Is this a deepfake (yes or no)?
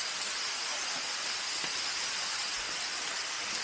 no